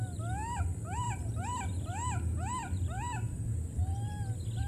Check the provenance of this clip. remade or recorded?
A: recorded